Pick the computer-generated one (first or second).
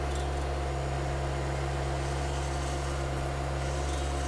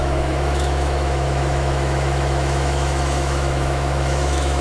second